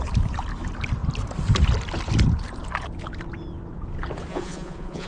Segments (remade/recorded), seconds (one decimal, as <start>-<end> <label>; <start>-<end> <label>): 0.0-4.3 recorded; 4.3-5.1 remade